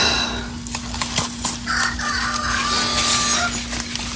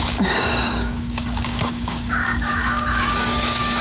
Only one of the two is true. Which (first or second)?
first